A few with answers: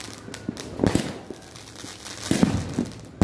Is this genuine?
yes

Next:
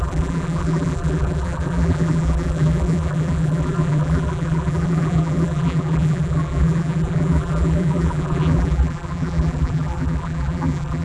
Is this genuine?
no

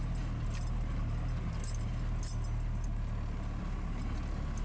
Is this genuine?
yes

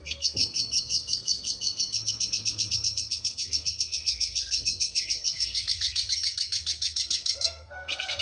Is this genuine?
no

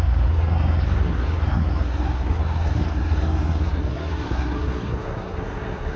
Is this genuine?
no